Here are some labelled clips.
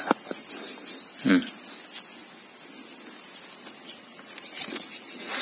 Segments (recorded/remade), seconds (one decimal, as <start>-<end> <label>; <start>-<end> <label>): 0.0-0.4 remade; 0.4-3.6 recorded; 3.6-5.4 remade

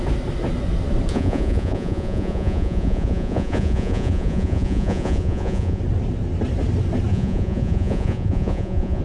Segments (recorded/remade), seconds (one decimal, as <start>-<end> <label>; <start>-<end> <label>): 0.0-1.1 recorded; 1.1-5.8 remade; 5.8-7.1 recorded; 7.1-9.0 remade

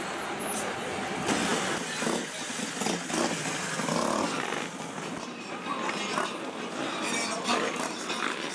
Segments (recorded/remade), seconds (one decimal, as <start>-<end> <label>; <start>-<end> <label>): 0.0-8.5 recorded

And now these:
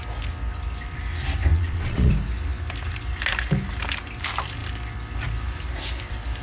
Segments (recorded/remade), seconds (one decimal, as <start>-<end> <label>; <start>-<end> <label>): 0.0-1.5 recorded; 1.5-2.1 remade; 2.1-6.4 recorded

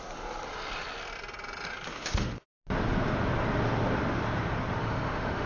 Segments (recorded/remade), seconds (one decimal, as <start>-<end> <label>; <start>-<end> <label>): 0.0-1.9 recorded; 1.9-2.5 remade; 2.5-4.8 recorded; 4.8-5.5 remade

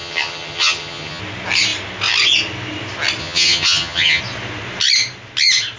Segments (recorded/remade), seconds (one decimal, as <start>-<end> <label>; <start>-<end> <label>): 0.0-1.2 remade; 1.2-3.2 recorded; 3.2-4.2 remade; 4.2-5.8 recorded